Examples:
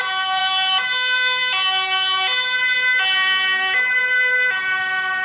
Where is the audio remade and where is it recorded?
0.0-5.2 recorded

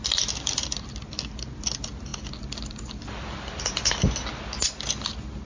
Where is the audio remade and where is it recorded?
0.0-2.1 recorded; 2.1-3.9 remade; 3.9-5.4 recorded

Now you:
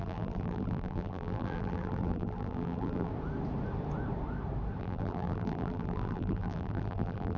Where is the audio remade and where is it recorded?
0.0-3.1 remade; 3.1-4.8 recorded; 4.8-7.4 remade

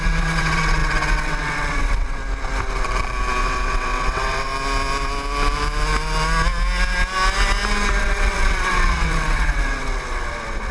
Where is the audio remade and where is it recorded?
0.0-2.2 remade; 2.2-3.4 recorded; 3.4-4.5 remade; 4.5-8.0 recorded; 8.0-10.7 remade